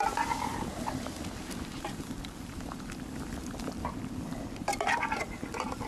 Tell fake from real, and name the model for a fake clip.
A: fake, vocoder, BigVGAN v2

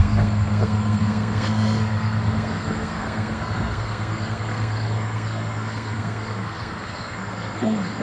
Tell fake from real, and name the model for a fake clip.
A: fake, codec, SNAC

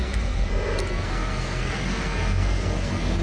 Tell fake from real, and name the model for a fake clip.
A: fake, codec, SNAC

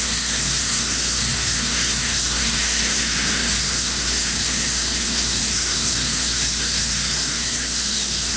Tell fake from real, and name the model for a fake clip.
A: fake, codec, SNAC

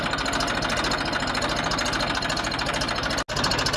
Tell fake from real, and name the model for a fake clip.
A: real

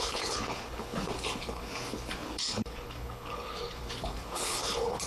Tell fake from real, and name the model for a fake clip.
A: fake, codec, HILCodec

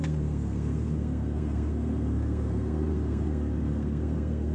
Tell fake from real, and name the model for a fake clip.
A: fake, codec, SNAC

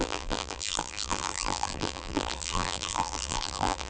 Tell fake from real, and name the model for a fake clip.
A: fake, vocoder, BigVGAN v2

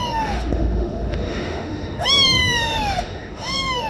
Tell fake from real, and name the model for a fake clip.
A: fake, autoencoder, DAC-VAE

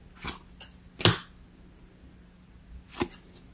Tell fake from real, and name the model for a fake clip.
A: real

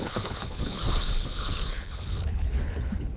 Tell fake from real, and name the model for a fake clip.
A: fake, codec, HILCodec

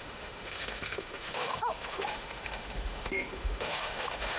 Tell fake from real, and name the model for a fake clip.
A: fake, autoencoder, DAC-VAE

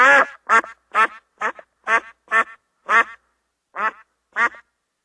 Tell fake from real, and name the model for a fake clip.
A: real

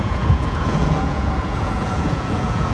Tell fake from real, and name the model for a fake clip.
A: fake, vocoder, Vocos